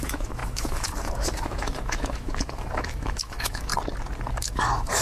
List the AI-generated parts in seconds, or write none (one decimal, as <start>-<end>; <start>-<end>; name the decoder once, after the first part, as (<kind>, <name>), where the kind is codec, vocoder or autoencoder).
0.0-3.7 (autoencoder, DAC-VAE); 4.3-5.0